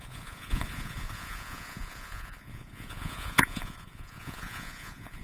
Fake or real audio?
fake